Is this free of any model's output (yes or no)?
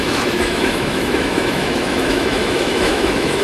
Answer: no